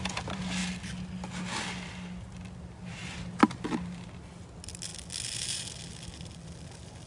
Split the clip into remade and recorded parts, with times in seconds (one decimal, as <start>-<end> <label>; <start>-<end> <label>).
0.0-7.1 recorded